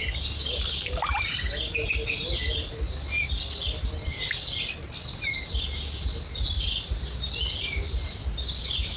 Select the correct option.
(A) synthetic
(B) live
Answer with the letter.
B